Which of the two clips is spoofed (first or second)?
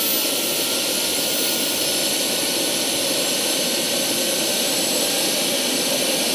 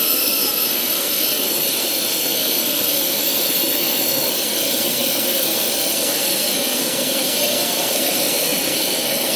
second